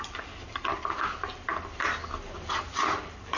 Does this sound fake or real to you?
real